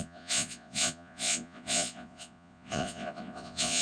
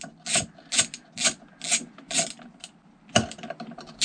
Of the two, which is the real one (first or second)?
second